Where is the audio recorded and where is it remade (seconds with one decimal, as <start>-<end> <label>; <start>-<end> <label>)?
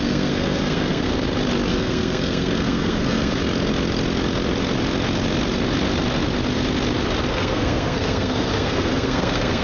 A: 0.0-1.1 remade; 1.1-1.7 recorded; 1.7-3.4 remade; 3.4-7.3 recorded; 7.3-9.6 remade